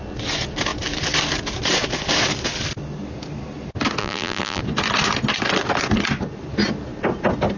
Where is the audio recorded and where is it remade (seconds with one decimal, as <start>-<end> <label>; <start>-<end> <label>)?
0.0-4.0 recorded; 4.0-4.6 remade; 4.6-7.6 recorded